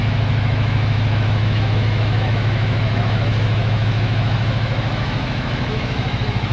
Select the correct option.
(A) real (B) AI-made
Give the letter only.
B